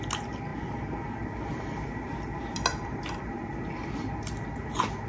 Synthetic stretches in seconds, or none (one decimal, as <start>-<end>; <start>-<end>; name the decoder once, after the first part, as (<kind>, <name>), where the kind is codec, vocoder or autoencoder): none